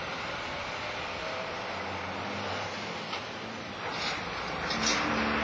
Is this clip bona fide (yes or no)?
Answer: yes